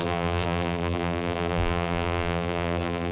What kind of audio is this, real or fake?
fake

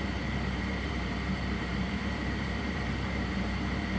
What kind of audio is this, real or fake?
fake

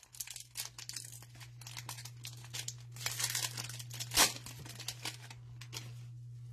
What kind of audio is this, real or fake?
real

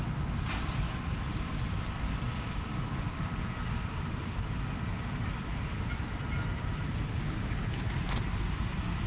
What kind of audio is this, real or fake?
fake